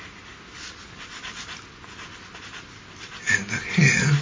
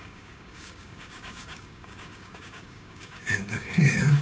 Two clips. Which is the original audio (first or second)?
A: first